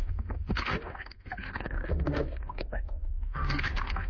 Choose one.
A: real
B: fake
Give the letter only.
B